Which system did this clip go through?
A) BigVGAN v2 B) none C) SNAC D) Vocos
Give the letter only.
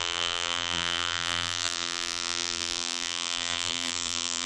A